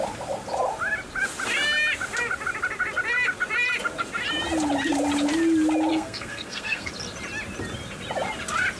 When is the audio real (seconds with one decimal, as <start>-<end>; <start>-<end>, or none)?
0.0-5.9; 6.9-8.8